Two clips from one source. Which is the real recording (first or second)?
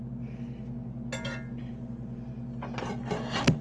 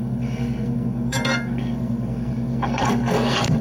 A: first